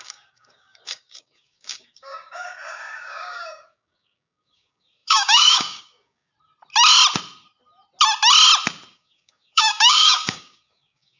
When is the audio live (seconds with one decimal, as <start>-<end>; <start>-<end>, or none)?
6.3-8.9